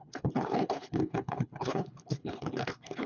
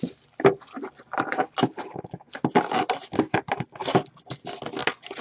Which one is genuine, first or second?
second